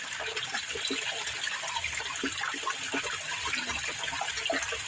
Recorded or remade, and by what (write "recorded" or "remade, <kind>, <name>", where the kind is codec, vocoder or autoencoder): recorded